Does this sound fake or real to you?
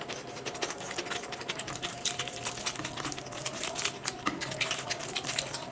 real